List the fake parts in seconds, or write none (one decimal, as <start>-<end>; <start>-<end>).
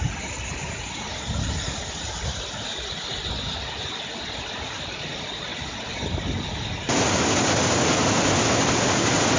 none